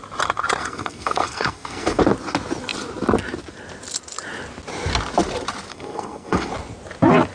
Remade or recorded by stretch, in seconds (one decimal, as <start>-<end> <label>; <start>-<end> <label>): 0.0-0.6 recorded; 0.6-2.0 remade; 2.0-5.7 recorded; 5.7-6.5 remade; 6.5-7.3 recorded